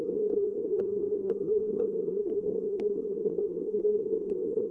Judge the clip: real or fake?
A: fake